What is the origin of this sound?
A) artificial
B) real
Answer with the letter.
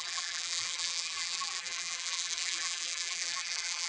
A